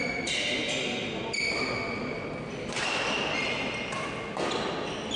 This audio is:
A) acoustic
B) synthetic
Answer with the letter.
A